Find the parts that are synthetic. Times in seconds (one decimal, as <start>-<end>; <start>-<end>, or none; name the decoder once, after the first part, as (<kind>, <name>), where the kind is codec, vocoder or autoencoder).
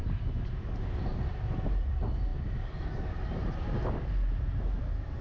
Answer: none